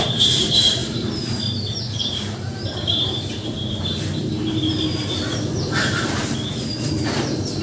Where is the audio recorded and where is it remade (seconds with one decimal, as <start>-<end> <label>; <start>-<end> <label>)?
0.0-6.7 remade; 6.7-7.6 recorded

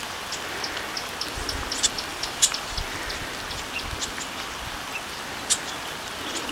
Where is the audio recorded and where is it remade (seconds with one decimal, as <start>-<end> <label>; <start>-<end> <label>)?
0.0-2.1 recorded; 2.1-2.8 remade; 2.8-6.5 recorded

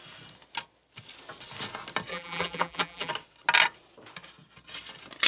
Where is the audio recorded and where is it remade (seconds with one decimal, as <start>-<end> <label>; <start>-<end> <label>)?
0.0-2.1 recorded; 2.1-3.1 remade; 3.1-5.3 recorded

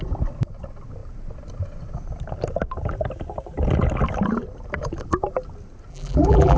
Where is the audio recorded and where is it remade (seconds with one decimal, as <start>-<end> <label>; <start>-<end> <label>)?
0.0-5.9 recorded; 5.9-6.6 remade